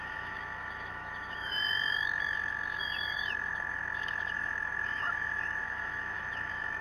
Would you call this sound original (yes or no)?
no